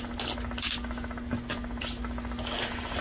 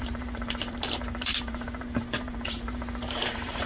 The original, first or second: first